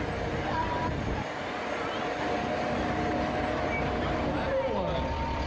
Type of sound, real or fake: real